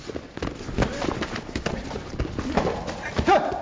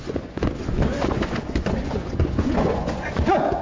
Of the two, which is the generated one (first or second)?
second